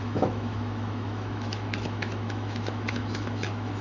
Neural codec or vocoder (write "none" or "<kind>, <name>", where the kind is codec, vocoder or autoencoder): autoencoder, DAC-VAE